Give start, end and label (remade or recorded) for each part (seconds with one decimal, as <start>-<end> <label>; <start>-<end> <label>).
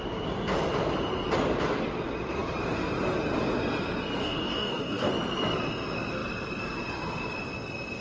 0.0-4.2 recorded; 4.2-5.1 remade; 5.1-8.0 recorded